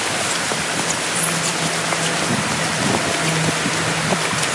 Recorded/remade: recorded